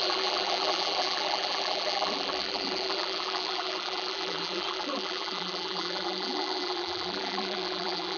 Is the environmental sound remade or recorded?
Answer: remade